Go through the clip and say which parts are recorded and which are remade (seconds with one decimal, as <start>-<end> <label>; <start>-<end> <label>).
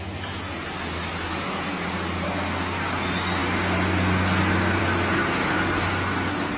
0.0-6.6 recorded